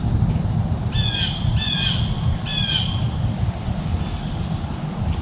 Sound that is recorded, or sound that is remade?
recorded